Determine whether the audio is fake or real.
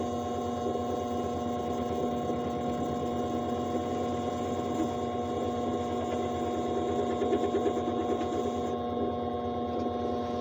real